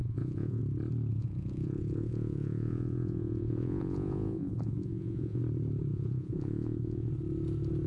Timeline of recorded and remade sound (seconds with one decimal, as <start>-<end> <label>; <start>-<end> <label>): 0.0-0.6 remade; 0.6-1.1 recorded; 1.1-5.4 remade; 5.4-5.9 recorded; 5.9-7.1 remade; 7.1-7.9 recorded